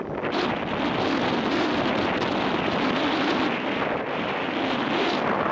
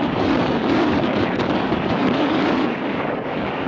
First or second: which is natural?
first